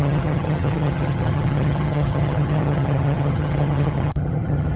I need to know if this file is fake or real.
fake